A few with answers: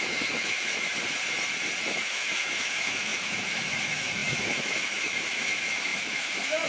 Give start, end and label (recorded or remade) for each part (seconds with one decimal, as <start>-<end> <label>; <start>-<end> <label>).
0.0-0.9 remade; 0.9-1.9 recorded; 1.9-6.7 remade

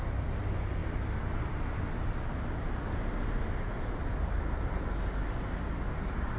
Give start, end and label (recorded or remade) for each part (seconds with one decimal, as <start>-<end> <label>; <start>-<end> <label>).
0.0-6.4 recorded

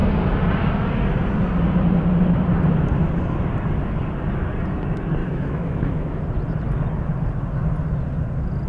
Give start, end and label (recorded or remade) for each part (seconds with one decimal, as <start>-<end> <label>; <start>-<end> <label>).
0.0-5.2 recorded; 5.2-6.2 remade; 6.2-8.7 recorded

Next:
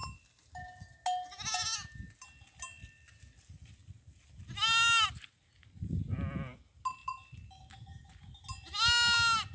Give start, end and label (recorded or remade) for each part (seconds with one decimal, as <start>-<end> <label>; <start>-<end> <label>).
0.0-9.5 recorded

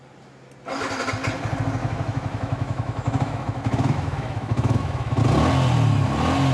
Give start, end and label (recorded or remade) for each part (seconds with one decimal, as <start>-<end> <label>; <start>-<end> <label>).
0.0-1.8 recorded; 1.8-5.2 remade; 5.2-6.5 recorded

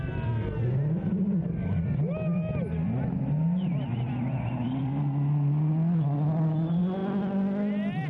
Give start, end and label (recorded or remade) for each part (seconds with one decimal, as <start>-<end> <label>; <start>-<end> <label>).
0.0-8.1 recorded

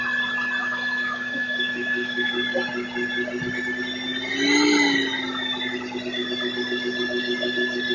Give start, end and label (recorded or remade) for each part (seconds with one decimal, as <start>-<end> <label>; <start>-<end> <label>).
0.0-0.6 recorded; 0.6-2.3 remade; 2.3-7.9 recorded